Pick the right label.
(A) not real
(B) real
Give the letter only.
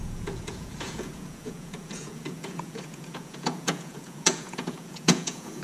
A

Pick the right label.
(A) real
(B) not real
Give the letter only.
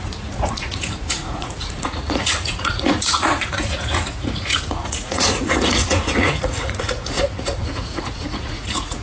B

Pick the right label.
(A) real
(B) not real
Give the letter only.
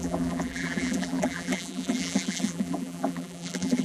B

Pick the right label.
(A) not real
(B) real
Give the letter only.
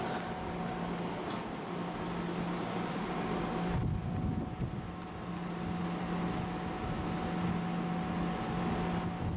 B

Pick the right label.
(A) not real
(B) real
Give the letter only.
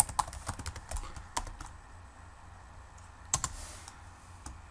B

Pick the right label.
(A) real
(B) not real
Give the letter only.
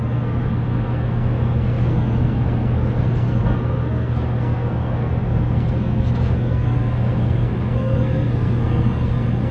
B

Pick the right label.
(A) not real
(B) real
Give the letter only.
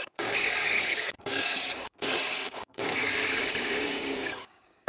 A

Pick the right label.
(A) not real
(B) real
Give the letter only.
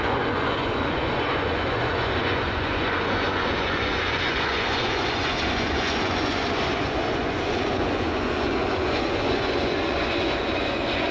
A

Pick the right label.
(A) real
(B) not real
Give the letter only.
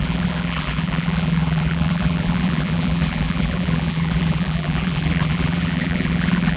B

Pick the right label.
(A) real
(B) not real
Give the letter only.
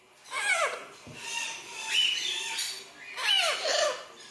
B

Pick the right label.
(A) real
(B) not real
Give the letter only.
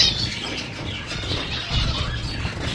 B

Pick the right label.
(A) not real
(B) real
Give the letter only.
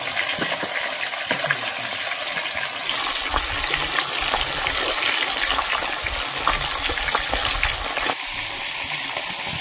B